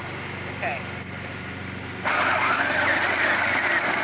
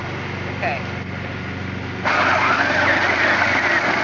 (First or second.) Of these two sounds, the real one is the second